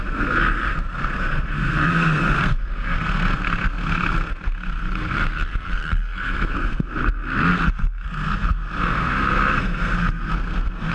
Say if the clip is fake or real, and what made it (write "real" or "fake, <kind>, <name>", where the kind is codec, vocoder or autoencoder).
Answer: fake, codec, SNAC